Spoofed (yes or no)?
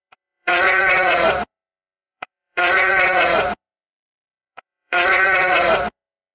yes